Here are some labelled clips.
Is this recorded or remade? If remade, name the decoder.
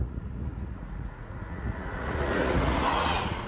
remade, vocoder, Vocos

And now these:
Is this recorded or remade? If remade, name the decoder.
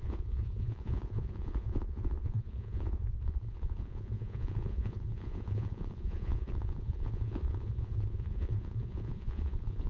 remade, vocoder, Vocos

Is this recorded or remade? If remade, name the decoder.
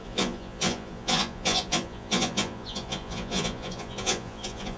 remade, vocoder, Vocos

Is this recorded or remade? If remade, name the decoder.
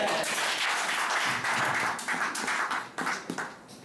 recorded